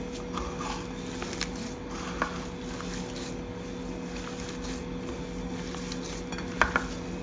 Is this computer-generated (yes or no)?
no